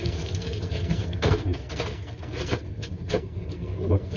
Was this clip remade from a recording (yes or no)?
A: yes